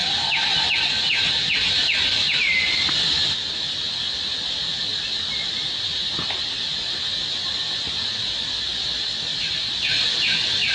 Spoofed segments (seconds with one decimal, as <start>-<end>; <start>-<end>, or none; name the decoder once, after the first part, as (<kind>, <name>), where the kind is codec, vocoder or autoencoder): none

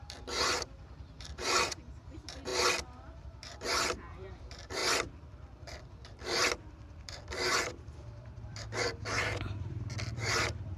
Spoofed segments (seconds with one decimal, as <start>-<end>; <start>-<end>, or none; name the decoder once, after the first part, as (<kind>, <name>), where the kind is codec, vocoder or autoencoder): 0.0-10.8 (vocoder, BigVGAN v2)

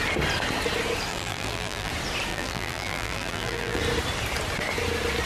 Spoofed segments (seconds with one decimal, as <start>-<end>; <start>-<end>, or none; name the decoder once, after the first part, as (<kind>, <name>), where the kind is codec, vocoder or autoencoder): 1.1-1.9 (vocoder, BigVGAN v2); 2.3-3.8

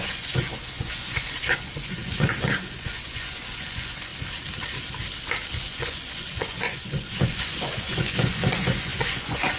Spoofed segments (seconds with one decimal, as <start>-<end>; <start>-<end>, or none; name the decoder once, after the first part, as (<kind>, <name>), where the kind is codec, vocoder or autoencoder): 0.0-4.1 (vocoder, Vocos); 5.5-9.6

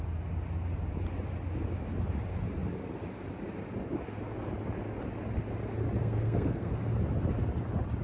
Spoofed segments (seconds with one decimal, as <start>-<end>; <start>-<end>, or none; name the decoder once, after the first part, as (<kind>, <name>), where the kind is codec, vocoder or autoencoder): 6.0-6.7 (codec, SNAC)

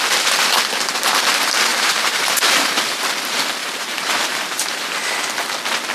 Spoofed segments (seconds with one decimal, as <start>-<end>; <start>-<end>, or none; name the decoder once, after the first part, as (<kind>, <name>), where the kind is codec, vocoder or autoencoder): 1.7-2.8 (vocoder, BigVGAN v2); 3.6-4.9

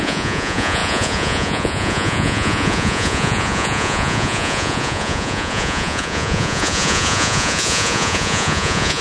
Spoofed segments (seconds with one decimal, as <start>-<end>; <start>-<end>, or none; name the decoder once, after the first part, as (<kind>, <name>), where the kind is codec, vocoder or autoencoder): 0.0-9.0 (vocoder, Vocos)

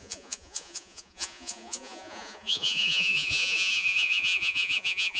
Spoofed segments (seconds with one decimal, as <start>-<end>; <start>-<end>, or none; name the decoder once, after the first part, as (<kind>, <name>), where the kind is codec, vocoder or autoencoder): 0.0-5.2 (vocoder, Vocos)